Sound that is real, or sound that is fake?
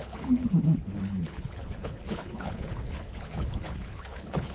fake